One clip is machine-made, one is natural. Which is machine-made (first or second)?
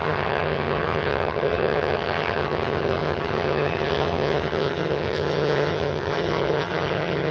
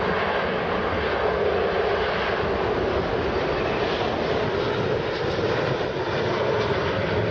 first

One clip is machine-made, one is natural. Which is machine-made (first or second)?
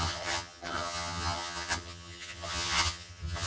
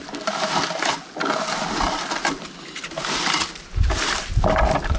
first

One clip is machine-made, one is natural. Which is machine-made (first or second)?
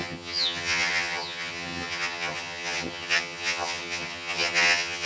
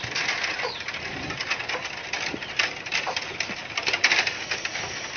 first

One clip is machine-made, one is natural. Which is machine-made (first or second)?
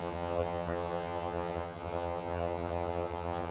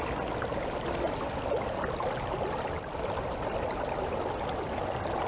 first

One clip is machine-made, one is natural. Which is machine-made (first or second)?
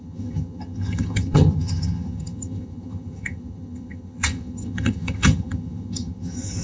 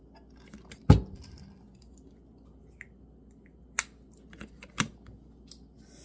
first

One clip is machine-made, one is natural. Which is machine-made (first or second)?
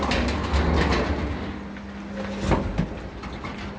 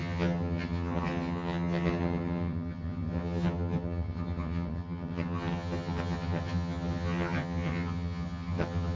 second